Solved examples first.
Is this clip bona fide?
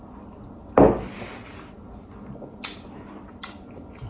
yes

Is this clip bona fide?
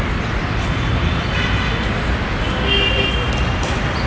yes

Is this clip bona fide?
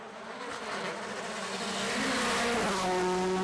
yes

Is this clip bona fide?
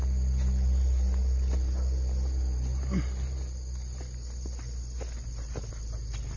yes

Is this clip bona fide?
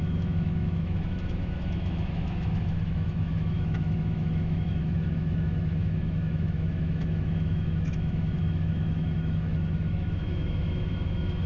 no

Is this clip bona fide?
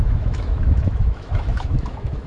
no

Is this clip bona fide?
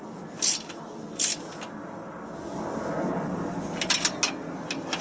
yes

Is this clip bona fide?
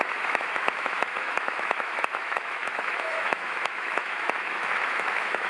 no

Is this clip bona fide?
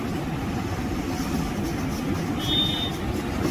yes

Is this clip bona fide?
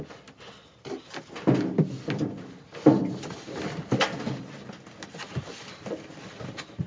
yes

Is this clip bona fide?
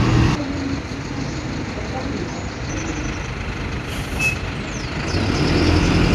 yes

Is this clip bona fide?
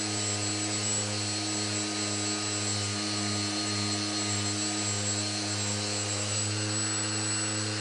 yes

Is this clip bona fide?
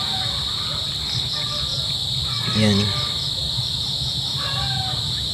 yes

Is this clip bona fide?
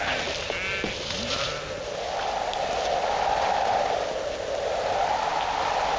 yes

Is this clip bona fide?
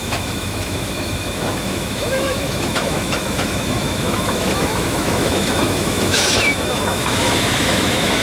no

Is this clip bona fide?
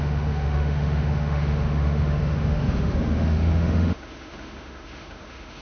no